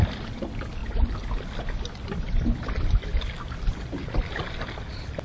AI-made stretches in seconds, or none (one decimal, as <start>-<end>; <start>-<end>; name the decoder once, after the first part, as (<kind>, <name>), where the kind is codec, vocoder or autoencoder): 0.0-0.8 (vocoder, BigVGAN v2); 1.9-3.1; 4.6-5.2